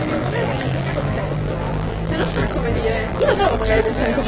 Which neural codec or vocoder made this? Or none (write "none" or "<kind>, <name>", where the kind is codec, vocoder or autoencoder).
vocoder, BigVGAN v2